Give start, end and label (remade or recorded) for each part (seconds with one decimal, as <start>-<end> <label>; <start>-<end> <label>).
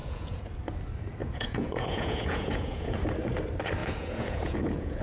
0.0-0.5 remade; 0.5-1.2 recorded; 1.2-3.0 remade; 3.0-3.8 recorded; 3.8-5.0 remade